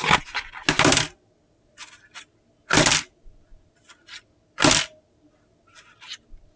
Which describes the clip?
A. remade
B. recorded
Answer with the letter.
B